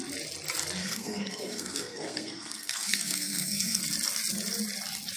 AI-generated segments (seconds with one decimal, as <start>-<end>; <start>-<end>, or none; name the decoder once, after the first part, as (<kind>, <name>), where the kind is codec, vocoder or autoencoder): 0.8-3.8 (codec, SNAC)